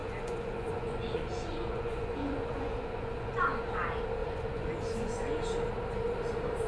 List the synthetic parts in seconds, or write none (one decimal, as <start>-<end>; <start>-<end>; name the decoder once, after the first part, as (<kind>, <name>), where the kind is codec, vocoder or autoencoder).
0.0-3.8 (vocoder, Vocos); 4.2-5.4